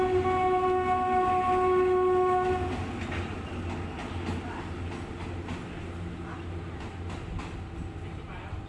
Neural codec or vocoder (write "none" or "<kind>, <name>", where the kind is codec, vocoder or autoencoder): none